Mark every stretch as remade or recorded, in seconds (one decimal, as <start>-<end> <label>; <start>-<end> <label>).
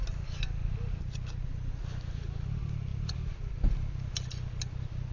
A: 0.0-5.1 recorded